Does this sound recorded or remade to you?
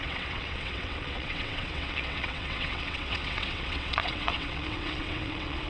remade